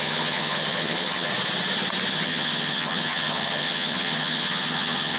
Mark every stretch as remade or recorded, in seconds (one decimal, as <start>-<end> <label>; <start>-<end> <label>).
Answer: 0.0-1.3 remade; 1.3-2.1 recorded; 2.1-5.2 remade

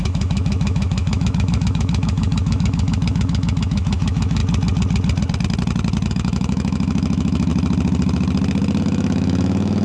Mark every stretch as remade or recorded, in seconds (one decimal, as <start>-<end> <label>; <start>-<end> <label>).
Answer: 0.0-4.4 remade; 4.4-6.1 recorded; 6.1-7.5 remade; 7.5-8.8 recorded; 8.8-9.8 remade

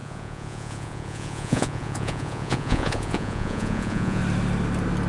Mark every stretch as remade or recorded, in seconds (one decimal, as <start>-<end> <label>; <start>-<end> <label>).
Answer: 0.0-4.2 remade; 4.2-5.1 recorded

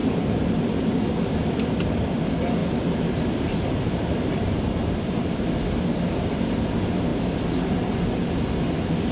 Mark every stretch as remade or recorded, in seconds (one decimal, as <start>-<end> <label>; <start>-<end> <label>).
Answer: 0.0-0.9 remade; 0.9-2.6 recorded; 2.6-5.1 remade; 5.1-9.1 recorded

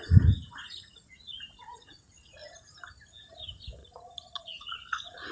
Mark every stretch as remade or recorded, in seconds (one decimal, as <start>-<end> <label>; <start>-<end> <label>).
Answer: 0.0-2.4 remade; 2.4-3.4 recorded; 3.4-3.8 remade; 3.8-4.4 recorded; 4.4-5.3 remade

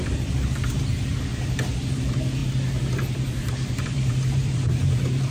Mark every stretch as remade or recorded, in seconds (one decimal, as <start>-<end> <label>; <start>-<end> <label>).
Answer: 0.0-1.3 remade; 1.3-1.9 recorded; 1.9-2.4 remade; 2.4-3.5 recorded; 3.5-5.3 remade